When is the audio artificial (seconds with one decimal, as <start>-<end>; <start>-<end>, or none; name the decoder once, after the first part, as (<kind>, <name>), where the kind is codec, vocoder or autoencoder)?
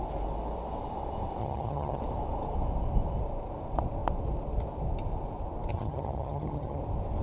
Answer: 1.4-2.0 (vocoder, HiFi-GAN); 5.7-6.8